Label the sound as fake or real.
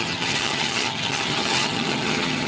fake